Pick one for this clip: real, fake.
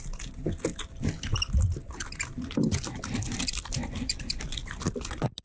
real